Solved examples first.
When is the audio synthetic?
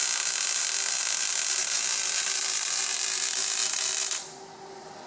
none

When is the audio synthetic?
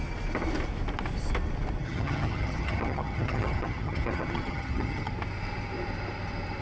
1.8-5.1 (vocoder, HiFi-GAN)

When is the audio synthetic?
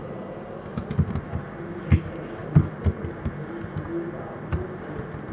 none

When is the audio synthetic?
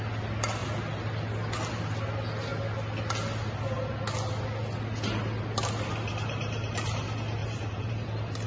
7.4-8.5 (vocoder, BigVGAN v2)